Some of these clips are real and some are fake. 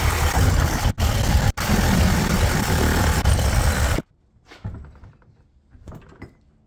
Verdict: real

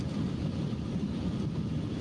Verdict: real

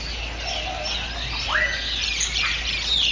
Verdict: real